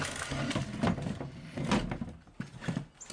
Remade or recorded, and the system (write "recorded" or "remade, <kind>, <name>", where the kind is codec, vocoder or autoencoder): recorded